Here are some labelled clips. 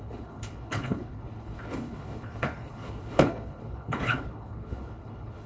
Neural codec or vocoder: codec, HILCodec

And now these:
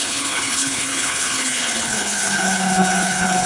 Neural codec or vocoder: codec, HILCodec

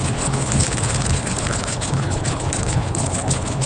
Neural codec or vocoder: codec, HILCodec